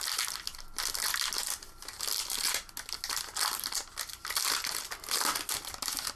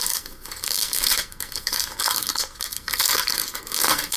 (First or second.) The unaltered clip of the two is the first